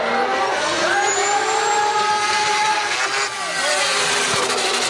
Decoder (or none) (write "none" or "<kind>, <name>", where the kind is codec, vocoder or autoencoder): none